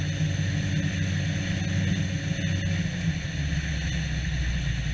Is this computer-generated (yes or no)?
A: no